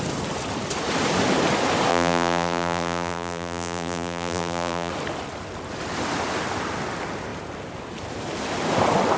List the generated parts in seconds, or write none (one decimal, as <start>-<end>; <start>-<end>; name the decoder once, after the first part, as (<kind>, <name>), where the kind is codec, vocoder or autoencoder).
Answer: 1.9-4.9 (vocoder, BigVGAN v2)